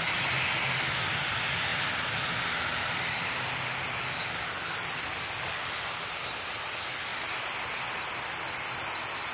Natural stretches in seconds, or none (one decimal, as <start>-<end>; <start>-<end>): 0.0-1.7; 5.1-7.1; 8.1-9.3